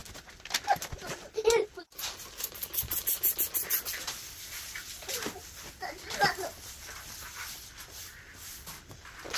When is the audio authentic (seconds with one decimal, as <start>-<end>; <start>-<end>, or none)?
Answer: 0.0-6.5; 8.1-9.4